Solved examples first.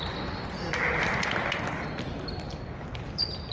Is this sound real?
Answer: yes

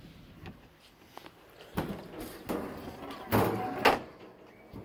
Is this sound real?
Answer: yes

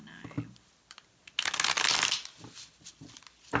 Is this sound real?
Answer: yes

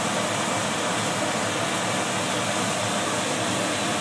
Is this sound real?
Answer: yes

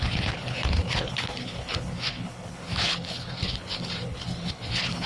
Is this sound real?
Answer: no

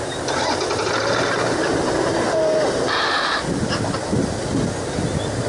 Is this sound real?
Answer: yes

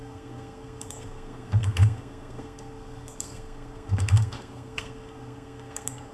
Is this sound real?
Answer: no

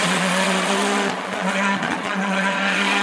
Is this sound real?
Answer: no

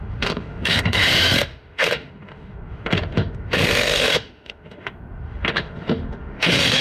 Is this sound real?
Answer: no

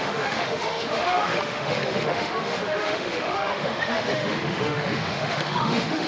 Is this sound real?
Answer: no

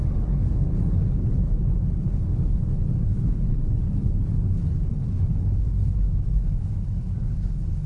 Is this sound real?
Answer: no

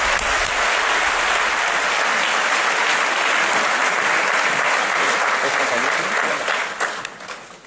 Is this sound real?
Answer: yes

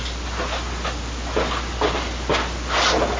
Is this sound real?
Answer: yes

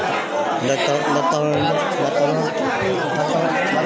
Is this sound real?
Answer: yes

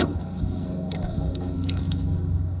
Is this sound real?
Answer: no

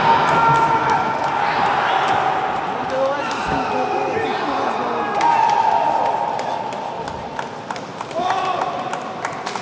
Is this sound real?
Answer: yes